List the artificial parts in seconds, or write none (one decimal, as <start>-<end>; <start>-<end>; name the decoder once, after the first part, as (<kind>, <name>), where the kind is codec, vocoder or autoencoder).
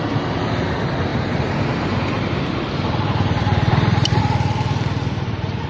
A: 1.1-4.2 (vocoder, BigVGAN v2)